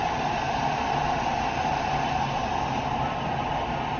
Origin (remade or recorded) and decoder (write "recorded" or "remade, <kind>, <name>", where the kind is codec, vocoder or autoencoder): recorded